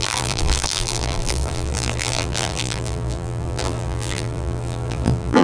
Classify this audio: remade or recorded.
remade